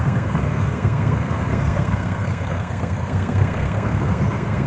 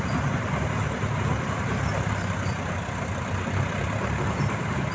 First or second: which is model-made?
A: first